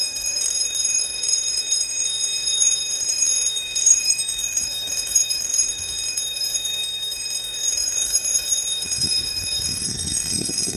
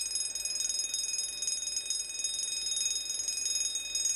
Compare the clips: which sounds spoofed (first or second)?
first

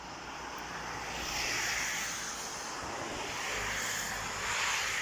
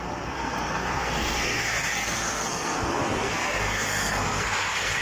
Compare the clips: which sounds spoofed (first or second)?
second